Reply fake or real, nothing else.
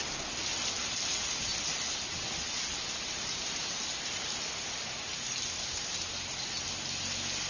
real